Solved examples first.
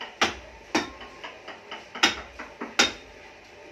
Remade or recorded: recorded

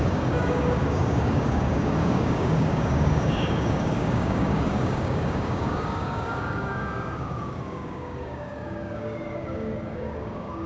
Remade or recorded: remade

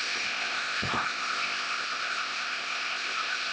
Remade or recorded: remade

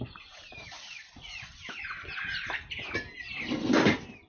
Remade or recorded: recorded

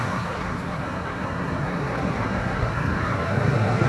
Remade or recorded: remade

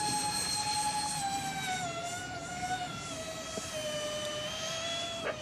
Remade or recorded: recorded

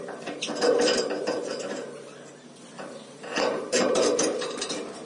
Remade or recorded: remade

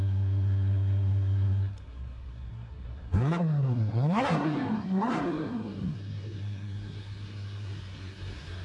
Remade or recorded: remade